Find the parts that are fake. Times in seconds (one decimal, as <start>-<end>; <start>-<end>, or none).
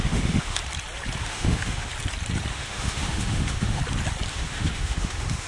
0.0-0.6; 1.2-1.9; 2.5-3.8; 4.3-5.5